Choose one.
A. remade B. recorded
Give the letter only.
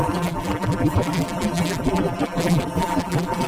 A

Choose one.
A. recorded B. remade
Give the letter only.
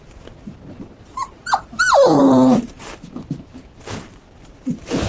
B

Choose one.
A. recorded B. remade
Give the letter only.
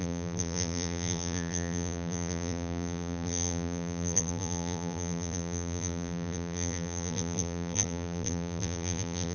B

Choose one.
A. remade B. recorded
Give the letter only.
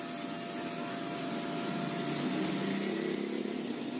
B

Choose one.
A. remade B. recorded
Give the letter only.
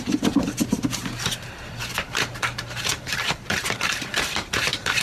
A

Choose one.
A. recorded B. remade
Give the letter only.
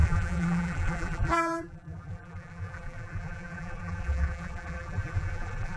B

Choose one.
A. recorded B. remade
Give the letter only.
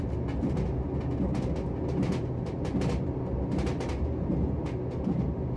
A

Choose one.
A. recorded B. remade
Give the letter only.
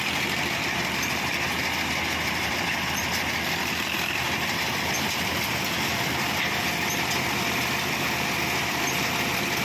B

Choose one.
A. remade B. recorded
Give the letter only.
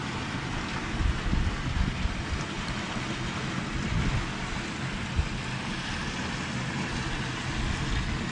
B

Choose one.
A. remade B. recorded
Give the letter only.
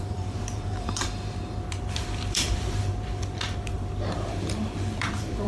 A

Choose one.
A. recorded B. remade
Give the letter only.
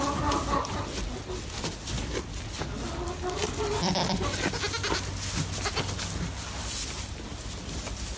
A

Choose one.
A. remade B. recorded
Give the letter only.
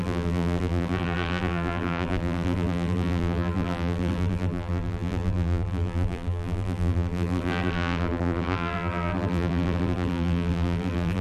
A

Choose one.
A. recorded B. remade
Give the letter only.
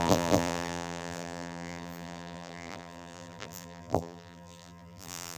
B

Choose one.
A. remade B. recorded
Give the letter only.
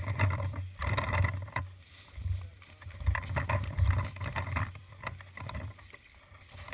A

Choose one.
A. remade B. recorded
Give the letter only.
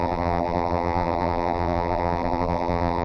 A